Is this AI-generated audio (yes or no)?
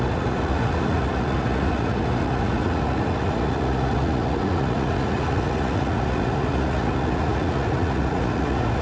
yes